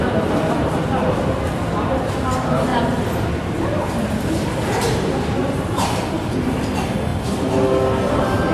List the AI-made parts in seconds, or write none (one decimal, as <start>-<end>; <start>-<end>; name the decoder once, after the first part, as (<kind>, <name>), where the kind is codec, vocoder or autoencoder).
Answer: none